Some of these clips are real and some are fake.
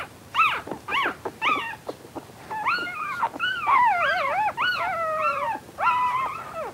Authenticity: real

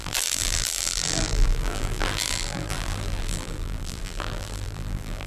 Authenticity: fake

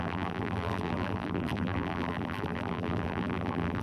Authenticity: fake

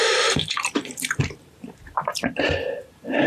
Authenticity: fake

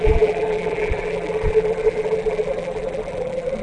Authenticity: fake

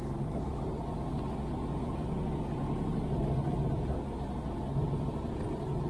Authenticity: real